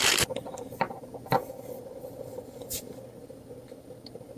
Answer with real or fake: real